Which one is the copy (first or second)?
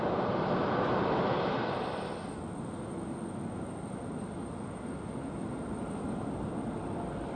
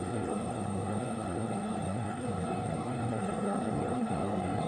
second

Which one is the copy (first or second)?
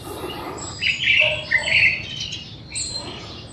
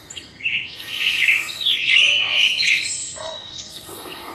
second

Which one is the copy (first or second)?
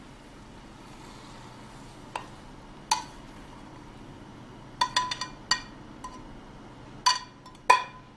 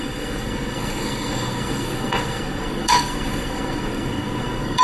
second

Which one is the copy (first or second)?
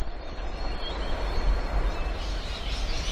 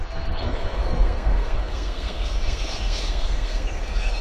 second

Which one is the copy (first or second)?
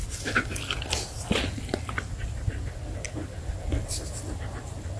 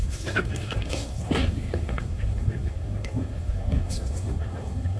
second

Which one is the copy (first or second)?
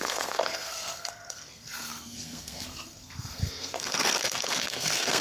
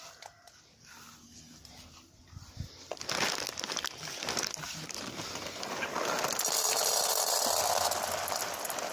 first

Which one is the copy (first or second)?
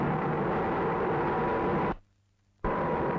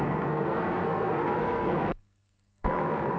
second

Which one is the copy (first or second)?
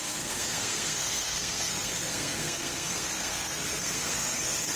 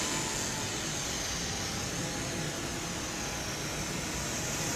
first